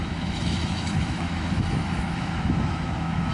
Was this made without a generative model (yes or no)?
no